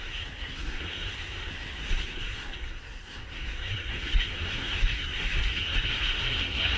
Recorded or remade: remade